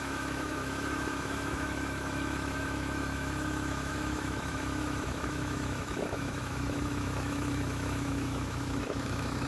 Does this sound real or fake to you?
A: fake